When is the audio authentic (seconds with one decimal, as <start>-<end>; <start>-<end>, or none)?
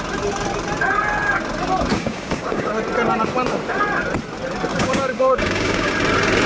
0.0-1.9; 2.7-4.7; 5.9-6.5